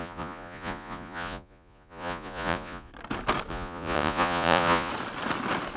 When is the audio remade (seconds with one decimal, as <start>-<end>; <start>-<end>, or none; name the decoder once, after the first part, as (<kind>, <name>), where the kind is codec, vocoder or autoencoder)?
0.0-2.9 (vocoder, Vocos); 3.5-4.9